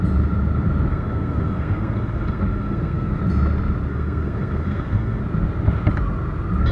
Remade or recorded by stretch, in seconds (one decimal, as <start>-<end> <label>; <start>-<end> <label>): 0.0-0.9 recorded; 0.9-3.2 remade; 3.2-3.9 recorded; 3.9-5.2 remade; 5.2-6.7 recorded